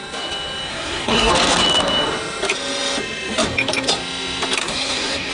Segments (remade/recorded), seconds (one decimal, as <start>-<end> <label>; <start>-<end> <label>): 0.0-0.7 recorded; 0.7-1.3 remade; 1.3-4.6 recorded; 4.6-5.3 remade